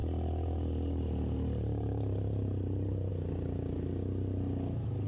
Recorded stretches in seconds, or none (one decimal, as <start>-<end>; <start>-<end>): 3.1-5.1